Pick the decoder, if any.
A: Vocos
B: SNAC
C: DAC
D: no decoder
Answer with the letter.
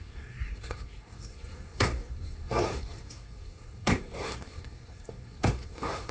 B